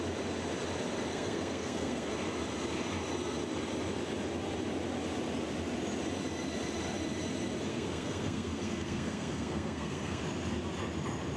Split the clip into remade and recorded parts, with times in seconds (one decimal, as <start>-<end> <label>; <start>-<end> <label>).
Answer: 0.0-1.1 recorded; 1.1-2.1 remade; 2.1-7.7 recorded; 7.7-10.2 remade; 10.2-11.4 recorded